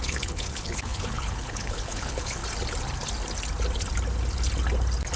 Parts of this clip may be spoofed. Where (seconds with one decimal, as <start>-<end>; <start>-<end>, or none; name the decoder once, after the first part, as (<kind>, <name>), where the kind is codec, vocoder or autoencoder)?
0.0-2.4 (codec, HILCodec)